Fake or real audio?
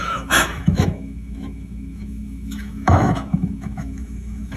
fake